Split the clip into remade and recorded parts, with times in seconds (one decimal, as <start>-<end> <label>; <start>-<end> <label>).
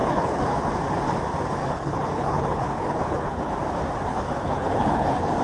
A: 0.0-0.7 remade; 0.7-1.6 recorded; 1.6-3.5 remade; 3.5-4.1 recorded; 4.1-5.4 remade